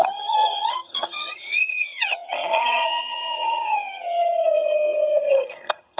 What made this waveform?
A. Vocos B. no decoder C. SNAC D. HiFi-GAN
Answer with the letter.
D